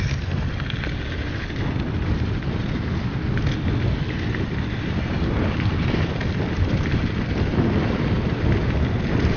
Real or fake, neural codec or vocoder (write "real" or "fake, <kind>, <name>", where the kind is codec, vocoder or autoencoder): real